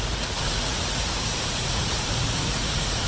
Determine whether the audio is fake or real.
fake